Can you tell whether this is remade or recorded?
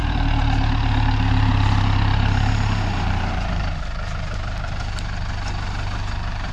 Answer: remade